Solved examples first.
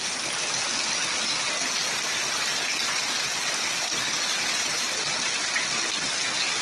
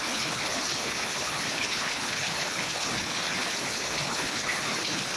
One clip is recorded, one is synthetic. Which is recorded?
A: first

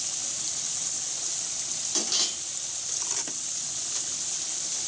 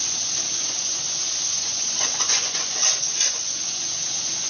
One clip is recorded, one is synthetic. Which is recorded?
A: first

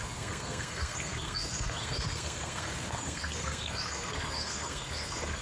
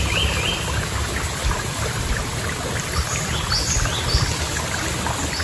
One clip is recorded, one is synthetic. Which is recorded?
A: second